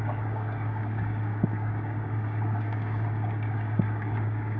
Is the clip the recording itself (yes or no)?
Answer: no